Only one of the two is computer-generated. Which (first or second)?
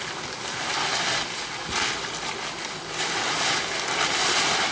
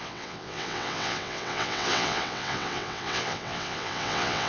second